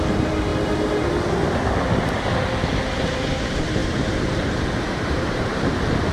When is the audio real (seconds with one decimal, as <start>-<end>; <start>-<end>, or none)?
0.5-2.7

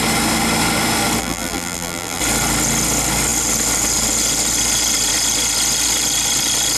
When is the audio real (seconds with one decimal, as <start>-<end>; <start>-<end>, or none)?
0.0-1.2; 2.2-6.8

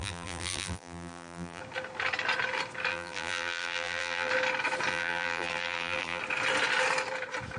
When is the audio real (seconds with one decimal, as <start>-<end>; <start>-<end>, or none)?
1.6-2.9; 4.3-4.9; 6.2-7.6

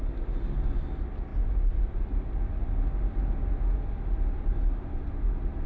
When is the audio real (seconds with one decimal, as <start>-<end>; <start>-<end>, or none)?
0.0-5.7